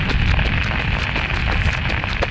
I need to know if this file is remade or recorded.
recorded